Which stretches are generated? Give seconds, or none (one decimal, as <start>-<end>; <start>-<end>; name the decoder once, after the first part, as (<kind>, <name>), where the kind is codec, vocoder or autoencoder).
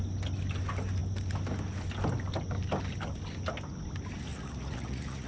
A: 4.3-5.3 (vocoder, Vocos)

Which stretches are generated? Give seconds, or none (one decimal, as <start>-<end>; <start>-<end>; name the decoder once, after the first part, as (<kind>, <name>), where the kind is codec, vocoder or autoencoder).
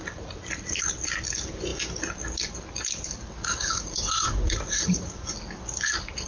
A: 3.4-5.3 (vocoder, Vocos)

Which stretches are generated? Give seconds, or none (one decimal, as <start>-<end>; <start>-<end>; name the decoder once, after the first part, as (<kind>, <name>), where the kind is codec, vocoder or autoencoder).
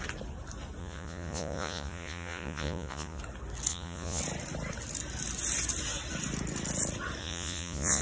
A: 0.8-3.2 (vocoder, Vocos); 3.7-4.2; 7.2-8.0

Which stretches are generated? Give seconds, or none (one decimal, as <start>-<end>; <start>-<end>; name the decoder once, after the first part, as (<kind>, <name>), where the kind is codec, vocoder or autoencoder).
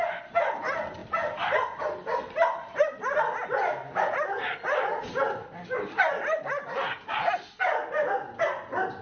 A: none